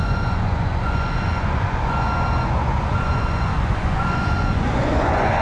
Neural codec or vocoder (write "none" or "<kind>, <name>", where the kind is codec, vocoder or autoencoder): vocoder, Vocos